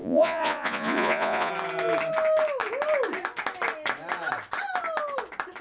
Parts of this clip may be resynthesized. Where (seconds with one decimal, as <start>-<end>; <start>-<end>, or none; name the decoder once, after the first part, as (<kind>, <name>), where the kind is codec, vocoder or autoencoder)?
0.0-1.5 (vocoder, Vocos)